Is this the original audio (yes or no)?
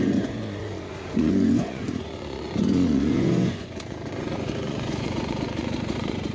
no